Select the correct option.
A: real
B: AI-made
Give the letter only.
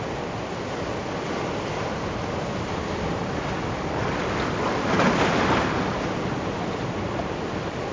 A